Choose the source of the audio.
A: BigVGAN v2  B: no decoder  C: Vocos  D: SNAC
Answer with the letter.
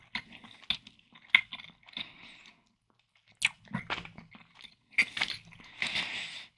B